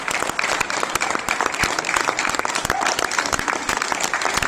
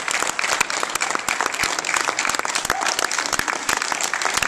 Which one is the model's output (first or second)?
first